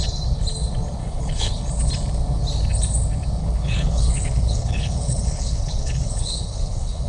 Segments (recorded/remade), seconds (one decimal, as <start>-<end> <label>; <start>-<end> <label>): 0.0-1.0 recorded; 1.0-1.6 remade; 1.6-3.4 recorded; 3.4-7.1 remade